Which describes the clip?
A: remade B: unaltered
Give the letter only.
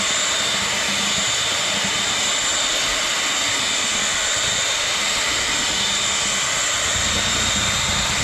B